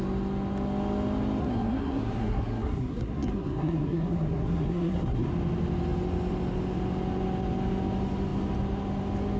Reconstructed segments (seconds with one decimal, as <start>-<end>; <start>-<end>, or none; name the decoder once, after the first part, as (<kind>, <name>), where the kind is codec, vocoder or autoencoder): 1.4-5.3 (codec, SNAC)

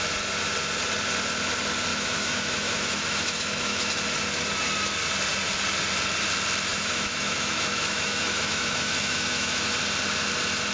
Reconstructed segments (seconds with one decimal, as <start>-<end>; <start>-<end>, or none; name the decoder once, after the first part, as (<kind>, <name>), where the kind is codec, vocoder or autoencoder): 1.9-3.8 (autoencoder, DAC-VAE); 6.7-9.7

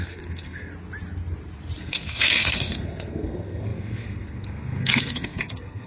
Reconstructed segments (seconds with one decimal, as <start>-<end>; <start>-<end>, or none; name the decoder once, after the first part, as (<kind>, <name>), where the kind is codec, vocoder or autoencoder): 0.0-0.7 (codec, SNAC); 1.8-5.9